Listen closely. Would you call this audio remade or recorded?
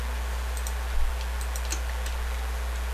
recorded